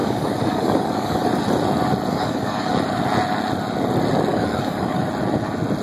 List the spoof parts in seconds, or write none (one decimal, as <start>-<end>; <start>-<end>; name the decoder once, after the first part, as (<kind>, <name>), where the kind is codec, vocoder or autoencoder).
0.0-1.2 (codec, DAC); 2.1-2.7; 4.3-5.0